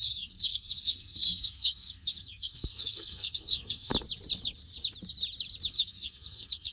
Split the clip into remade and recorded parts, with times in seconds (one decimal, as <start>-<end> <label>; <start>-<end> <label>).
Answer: 0.0-3.9 remade; 3.9-5.7 recorded; 5.7-6.7 remade